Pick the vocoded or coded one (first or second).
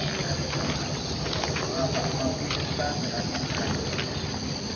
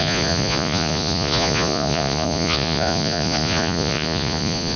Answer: second